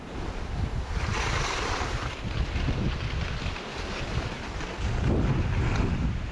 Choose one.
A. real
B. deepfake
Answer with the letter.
A